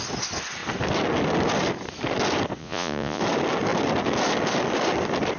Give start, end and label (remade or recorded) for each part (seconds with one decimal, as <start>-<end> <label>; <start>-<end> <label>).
0.0-2.6 recorded; 2.6-3.2 remade; 3.2-5.4 recorded